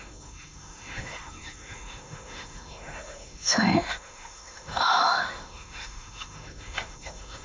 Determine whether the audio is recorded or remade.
remade